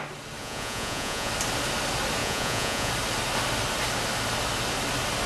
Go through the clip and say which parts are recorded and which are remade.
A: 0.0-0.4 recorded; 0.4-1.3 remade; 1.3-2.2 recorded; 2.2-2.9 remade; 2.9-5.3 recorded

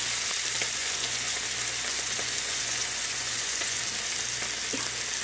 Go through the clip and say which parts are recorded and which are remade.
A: 0.0-0.8 recorded; 0.8-1.4 remade; 1.4-1.9 recorded; 1.9-3.8 remade; 3.8-5.2 recorded

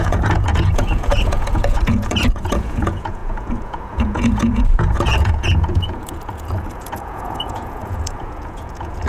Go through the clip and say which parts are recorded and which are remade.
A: 0.0-9.1 remade

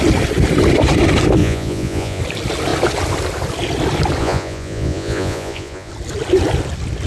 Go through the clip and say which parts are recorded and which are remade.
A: 0.0-1.4 recorded; 1.4-2.2 remade; 2.2-4.2 recorded; 4.2-5.9 remade; 5.9-7.1 recorded

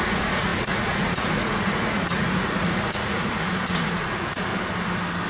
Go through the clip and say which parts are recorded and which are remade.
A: 0.0-4.5 remade; 4.5-5.3 recorded

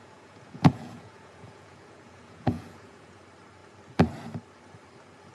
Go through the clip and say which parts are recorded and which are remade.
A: 0.0-3.2 remade; 3.2-5.3 recorded

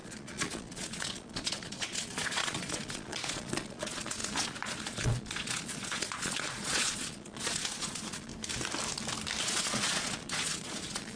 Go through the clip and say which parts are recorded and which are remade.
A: 0.0-8.3 remade; 8.3-9.4 recorded; 9.4-11.2 remade

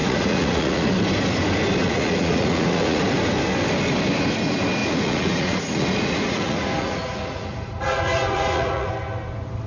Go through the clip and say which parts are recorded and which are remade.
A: 0.0-0.9 remade; 0.9-1.8 recorded; 1.8-3.0 remade; 3.0-4.8 recorded; 4.8-8.9 remade; 8.9-9.7 recorded